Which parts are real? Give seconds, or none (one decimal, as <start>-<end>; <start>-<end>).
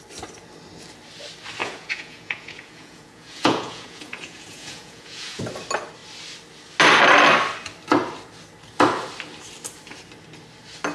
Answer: 0.0-1.6; 5.4-10.9